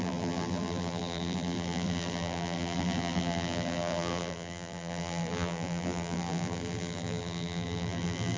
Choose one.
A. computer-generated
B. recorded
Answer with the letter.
A